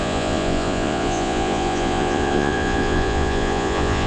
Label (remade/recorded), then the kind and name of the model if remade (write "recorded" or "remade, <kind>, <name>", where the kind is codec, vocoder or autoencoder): remade, vocoder, Vocos